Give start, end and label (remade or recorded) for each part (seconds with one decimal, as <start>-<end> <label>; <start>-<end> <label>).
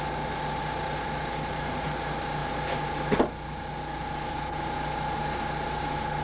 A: 0.0-6.2 recorded